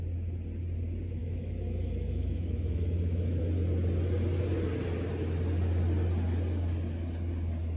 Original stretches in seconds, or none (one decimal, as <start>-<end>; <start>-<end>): 0.0-1.2; 3.4-7.8